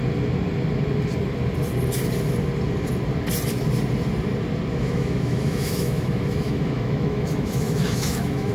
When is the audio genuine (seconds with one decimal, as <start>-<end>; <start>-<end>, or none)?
0.0-4.7